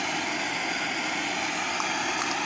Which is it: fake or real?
real